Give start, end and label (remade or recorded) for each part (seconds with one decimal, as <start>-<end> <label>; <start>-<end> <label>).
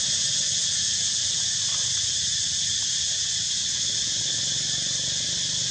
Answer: 0.0-5.7 recorded